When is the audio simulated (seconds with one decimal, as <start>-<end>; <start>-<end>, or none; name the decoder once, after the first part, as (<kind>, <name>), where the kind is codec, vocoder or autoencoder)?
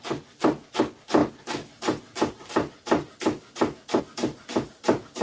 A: none